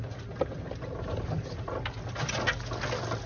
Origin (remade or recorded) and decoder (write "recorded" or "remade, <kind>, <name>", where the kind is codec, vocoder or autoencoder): recorded